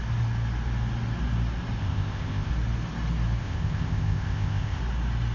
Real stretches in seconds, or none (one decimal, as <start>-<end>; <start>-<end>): 0.0-1.8; 2.5-3.4; 4.8-5.3